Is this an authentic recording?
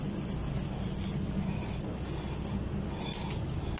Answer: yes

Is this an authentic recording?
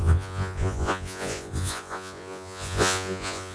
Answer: no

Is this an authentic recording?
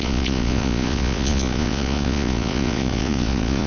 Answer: no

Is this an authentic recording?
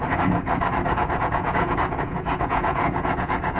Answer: no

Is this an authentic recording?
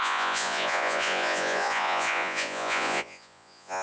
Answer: no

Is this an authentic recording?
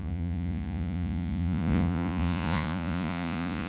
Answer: no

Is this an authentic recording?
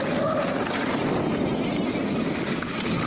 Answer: yes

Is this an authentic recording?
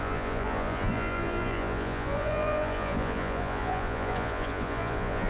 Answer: no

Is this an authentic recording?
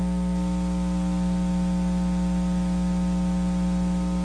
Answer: yes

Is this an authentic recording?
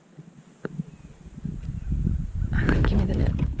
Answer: yes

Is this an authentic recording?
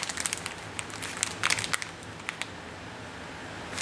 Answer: yes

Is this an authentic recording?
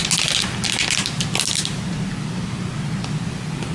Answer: yes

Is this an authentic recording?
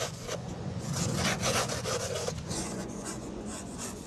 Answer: no